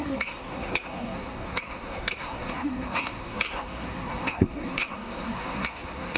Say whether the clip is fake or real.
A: fake